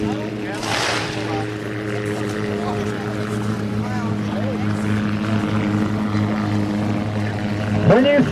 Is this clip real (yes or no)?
yes